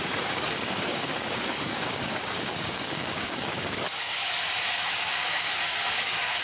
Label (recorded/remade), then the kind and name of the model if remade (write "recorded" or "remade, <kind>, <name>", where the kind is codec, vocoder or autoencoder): remade, codec, DAC